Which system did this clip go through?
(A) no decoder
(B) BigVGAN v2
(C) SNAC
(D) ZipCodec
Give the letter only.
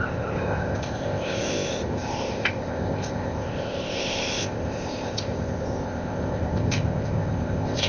D